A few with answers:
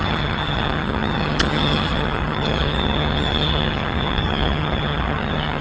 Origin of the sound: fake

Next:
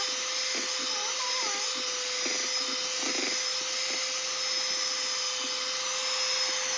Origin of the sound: real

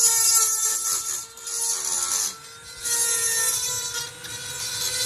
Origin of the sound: real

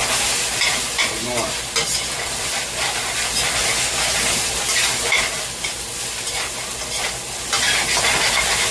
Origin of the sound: real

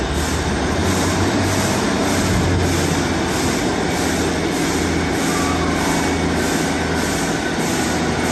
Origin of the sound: real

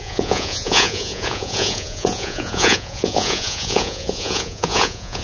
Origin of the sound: fake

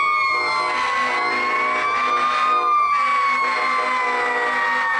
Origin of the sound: real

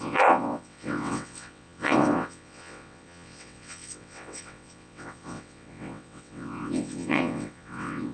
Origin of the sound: fake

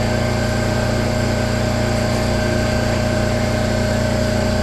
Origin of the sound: real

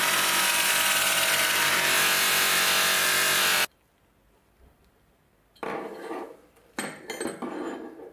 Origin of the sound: real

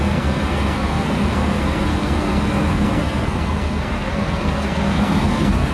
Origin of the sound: fake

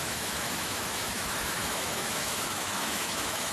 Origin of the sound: fake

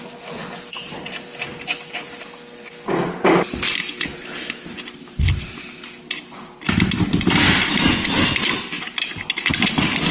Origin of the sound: real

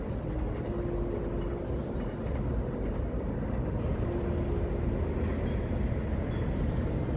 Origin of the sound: real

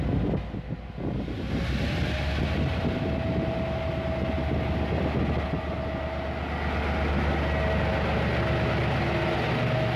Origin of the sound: real